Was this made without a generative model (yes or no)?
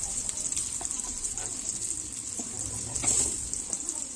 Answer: yes